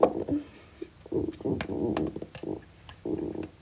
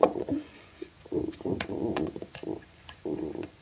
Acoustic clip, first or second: first